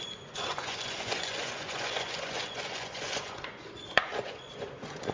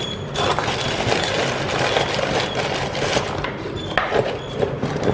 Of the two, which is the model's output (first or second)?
first